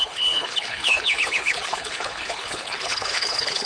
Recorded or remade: remade